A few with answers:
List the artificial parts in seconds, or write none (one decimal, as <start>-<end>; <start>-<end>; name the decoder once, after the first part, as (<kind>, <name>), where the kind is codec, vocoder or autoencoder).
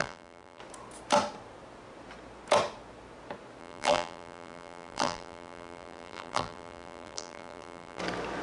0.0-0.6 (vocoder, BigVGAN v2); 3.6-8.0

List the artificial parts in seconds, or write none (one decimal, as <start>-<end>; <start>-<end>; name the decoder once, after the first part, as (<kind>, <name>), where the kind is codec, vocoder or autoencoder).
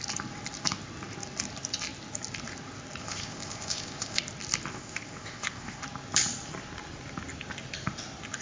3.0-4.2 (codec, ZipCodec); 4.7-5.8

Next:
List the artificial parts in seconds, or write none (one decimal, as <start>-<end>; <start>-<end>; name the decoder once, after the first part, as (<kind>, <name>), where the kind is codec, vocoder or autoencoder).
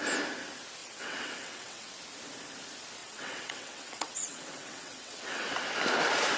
0.8-1.9 (vocoder, WaveNeXt); 3.0-5.5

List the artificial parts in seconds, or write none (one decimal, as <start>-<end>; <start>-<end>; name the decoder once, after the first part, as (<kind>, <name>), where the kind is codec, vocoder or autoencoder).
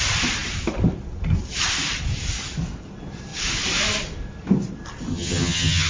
5.1-5.9 (vocoder, HiFi-GAN)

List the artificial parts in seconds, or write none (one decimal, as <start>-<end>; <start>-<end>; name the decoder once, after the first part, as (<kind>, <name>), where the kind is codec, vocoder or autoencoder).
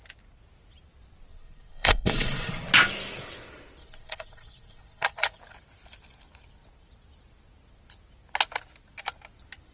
1.3-2.6 (vocoder, Vocos); 3.8-5.4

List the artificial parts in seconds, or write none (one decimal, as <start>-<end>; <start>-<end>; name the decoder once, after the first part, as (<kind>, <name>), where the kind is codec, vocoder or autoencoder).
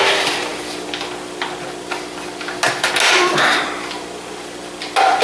none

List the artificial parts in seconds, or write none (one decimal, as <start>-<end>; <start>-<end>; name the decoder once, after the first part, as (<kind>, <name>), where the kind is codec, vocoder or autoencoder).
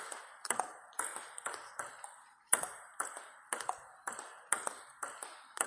none